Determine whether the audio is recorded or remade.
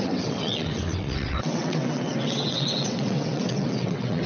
remade